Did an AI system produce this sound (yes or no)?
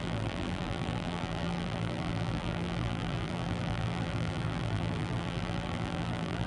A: yes